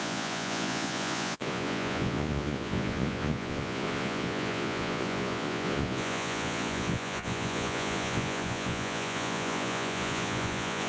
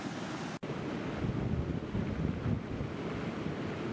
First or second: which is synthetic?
first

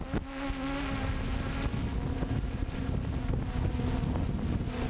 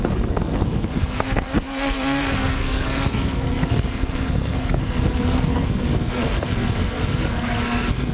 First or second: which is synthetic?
second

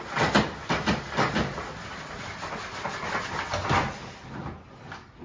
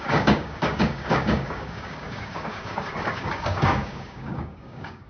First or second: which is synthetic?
second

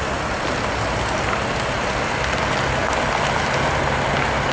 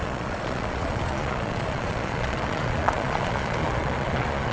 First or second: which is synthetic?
second